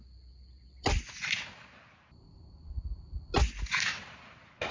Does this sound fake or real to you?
real